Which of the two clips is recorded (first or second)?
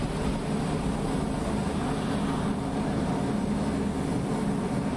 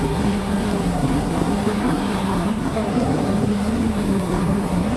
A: first